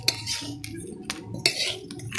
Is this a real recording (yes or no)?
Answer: yes